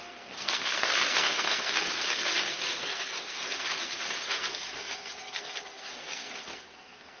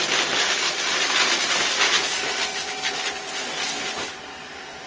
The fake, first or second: first